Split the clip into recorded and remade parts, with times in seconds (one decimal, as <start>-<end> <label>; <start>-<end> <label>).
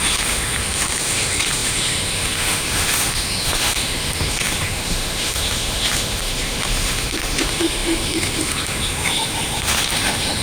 0.0-10.4 remade